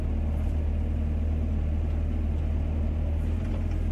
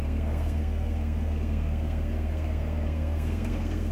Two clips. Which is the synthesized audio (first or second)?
second